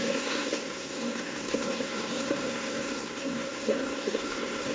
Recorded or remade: remade